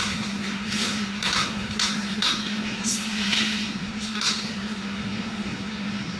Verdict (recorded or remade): remade